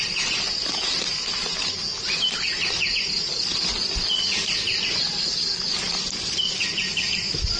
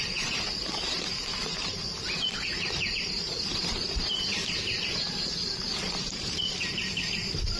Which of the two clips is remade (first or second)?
second